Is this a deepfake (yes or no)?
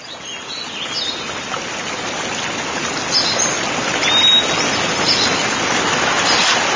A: no